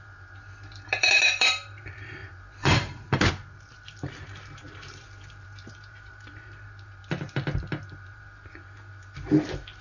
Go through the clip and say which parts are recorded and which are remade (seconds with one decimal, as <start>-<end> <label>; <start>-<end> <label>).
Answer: 0.0-7.0 remade; 7.0-7.6 recorded; 7.6-9.8 remade